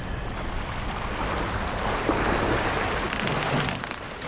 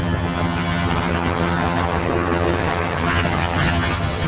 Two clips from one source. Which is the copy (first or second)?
second